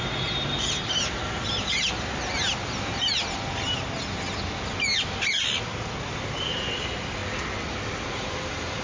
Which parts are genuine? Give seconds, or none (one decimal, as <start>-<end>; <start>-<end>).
1.2-6.2; 7.2-8.1

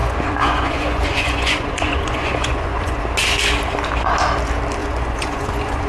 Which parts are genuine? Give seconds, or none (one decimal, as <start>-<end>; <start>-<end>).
3.0-4.8

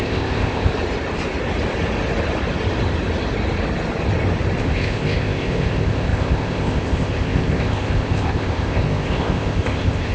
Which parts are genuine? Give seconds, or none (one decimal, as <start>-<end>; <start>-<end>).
0.7-4.6

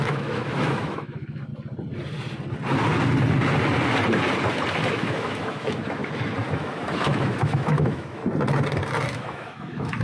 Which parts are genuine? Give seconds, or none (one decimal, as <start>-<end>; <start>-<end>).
1.5-4.9; 6.0-6.5; 8.2-9.1

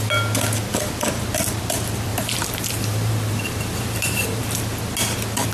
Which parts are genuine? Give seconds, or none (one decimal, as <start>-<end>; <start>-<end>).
0.0-2.1; 4.4-5.5

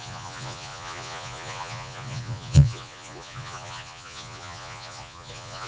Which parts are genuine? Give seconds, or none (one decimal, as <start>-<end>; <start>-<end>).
none